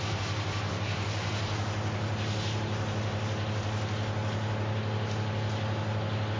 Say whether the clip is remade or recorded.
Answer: recorded